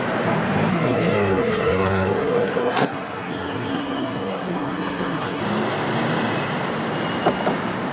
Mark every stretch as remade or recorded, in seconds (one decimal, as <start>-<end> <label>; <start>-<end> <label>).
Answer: 0.0-0.7 recorded; 0.7-5.4 remade; 5.4-7.9 recorded